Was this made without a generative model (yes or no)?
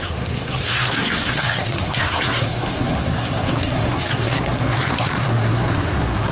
no